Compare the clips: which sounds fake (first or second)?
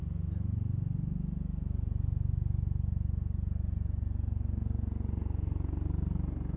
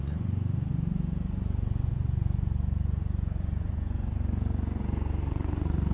second